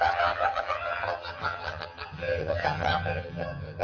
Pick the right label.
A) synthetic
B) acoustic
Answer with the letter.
A